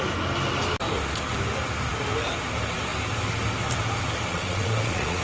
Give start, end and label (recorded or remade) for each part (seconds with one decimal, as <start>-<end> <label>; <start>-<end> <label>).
0.0-4.3 recorded; 4.3-5.2 remade